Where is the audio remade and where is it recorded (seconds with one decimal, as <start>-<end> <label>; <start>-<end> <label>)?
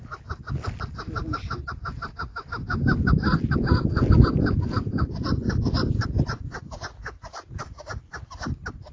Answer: 0.0-8.9 recorded